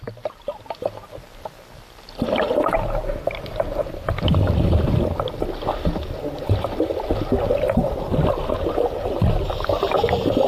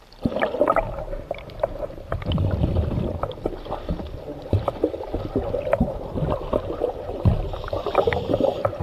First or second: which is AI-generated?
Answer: second